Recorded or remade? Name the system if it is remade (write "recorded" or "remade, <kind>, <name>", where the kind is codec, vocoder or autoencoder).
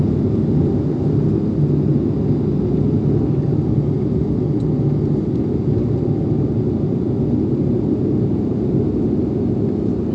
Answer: recorded